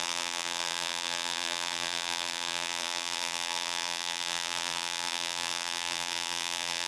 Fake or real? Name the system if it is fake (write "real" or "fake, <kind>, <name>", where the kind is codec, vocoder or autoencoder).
fake, vocoder, BigVGAN v2